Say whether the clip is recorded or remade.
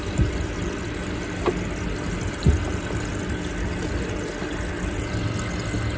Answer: recorded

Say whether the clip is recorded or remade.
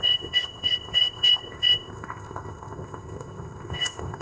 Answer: remade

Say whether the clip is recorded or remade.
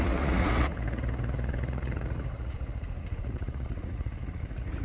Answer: remade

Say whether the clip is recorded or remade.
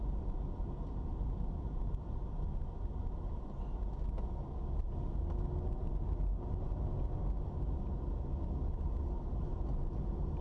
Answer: recorded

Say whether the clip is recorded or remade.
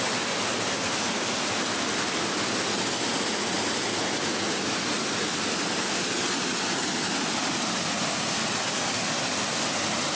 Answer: recorded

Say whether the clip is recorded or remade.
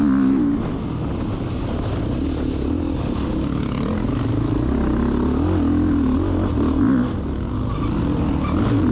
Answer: recorded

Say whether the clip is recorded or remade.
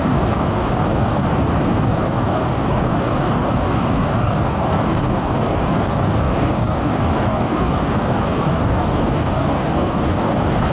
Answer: remade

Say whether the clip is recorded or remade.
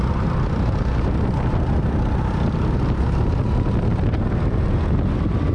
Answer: recorded